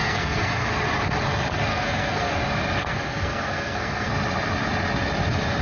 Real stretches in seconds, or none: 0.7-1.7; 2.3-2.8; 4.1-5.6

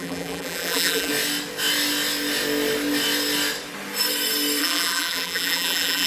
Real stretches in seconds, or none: 1.1-4.6